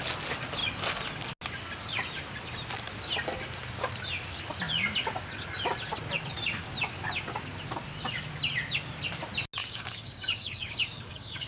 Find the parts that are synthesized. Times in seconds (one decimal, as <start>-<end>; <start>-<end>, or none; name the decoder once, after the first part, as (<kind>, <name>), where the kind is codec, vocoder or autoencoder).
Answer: 9.6-11.5 (codec, DAC)